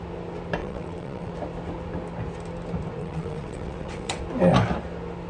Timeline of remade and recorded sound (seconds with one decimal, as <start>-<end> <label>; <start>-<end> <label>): 0.0-0.6 recorded; 0.6-1.3 remade; 1.3-3.0 recorded; 3.0-4.2 remade; 4.2-5.3 recorded